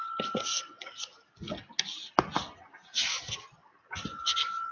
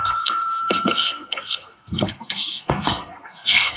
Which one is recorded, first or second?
first